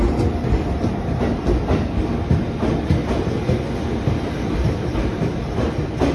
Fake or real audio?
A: real